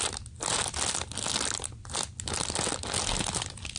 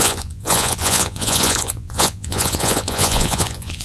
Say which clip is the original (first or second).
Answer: first